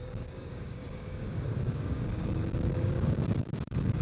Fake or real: fake